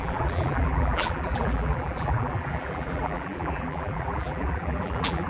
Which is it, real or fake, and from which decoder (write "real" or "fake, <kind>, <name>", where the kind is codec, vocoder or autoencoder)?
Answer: fake, vocoder, BigVGAN v2